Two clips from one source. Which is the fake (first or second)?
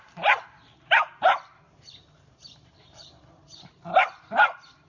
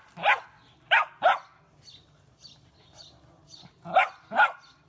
first